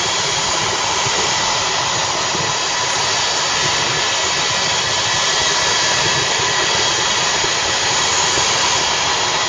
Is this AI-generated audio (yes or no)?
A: no